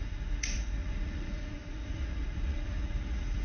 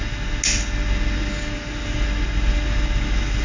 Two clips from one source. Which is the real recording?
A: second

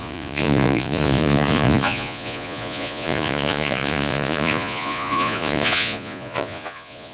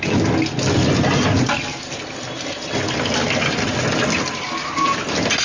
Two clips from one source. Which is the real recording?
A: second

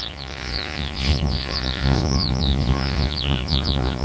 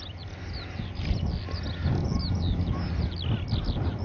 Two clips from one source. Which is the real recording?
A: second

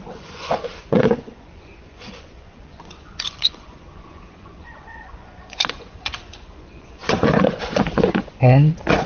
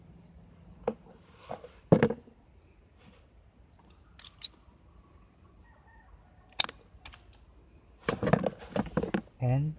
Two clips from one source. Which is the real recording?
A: second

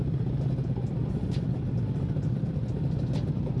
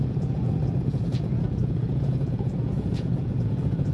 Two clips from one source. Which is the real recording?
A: first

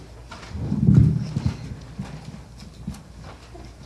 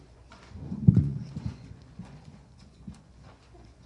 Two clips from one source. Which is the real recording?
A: first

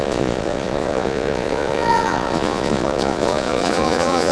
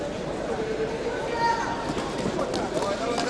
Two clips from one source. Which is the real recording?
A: second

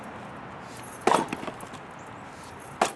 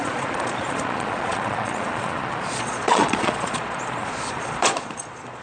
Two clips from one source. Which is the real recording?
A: first